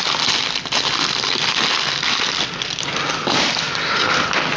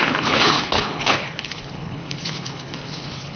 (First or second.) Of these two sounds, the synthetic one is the second